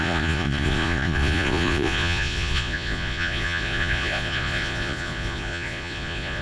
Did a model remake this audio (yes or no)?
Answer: yes